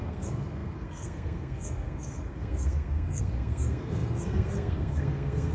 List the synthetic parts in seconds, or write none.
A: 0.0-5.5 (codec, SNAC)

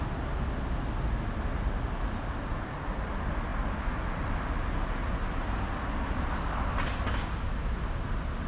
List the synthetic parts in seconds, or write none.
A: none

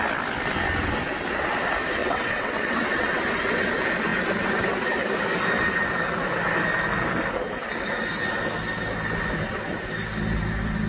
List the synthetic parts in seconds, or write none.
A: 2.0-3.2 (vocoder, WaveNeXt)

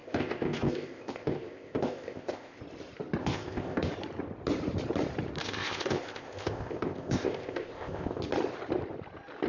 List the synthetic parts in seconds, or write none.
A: 0.0-2.6 (codec, ZipCodec); 3.2-3.9; 5.4-8.2

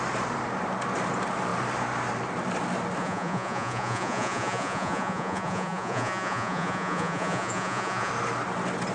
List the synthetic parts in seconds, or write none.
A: 3.0-8.1 (vocoder, Vocos)

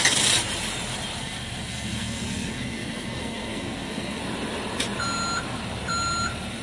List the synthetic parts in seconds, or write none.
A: 1.2-4.2 (codec, SNAC)

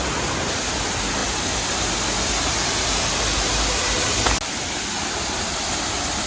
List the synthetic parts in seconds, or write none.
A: none